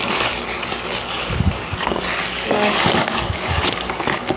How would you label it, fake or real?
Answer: fake